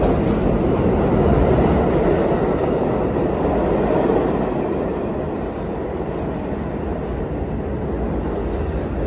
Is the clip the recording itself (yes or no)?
yes